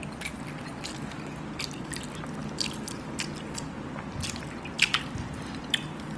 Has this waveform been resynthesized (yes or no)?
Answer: no